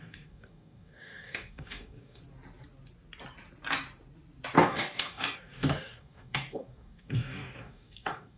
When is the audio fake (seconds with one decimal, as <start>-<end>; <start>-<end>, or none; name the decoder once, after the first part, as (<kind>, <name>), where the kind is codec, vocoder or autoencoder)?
0.0-2.2 (codec, DAC); 4.6-8.4